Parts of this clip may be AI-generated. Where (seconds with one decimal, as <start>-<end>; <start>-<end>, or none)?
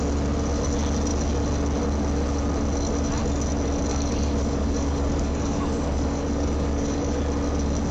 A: 3.9-7.2